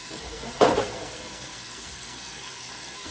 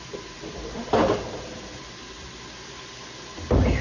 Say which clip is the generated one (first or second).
first